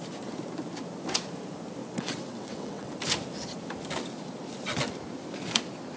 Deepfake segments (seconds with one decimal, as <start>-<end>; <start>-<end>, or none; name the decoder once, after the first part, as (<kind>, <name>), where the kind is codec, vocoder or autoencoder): 1.8-2.9 (vocoder, WaveNeXt)